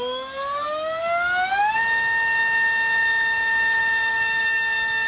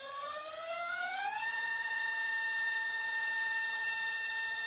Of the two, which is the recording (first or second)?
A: first